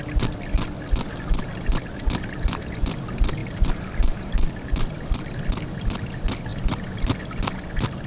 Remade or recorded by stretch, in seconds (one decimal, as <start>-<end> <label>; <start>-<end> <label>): 0.0-8.1 recorded